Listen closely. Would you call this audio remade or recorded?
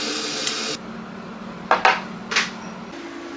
recorded